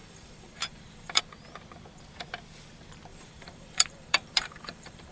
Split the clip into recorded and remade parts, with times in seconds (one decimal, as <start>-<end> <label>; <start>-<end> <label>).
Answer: 0.0-1.2 remade; 1.2-3.1 recorded; 3.1-5.1 remade